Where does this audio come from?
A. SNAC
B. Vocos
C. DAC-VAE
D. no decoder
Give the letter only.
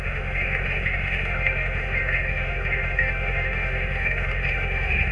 C